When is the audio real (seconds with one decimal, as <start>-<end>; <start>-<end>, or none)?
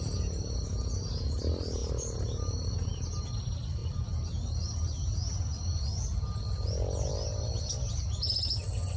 0.0-9.0